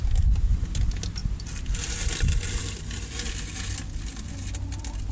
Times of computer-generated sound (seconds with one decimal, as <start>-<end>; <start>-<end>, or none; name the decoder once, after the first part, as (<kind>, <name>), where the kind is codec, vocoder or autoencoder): none